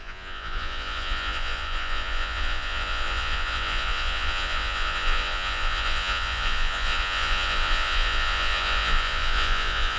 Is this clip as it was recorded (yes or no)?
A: no